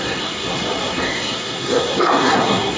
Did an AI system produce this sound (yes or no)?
yes